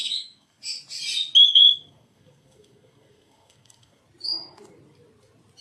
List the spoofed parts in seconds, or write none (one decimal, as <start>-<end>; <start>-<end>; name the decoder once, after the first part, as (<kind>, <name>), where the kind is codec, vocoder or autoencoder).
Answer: 0.0-0.6 (codec, SNAC); 1.4-4.0